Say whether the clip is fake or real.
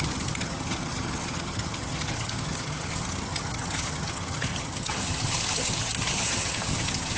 fake